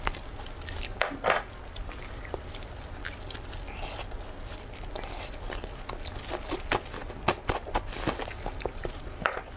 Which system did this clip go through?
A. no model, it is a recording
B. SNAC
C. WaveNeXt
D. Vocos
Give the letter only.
A